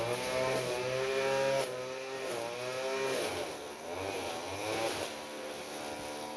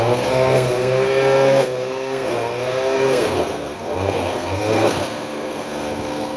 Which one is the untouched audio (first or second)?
first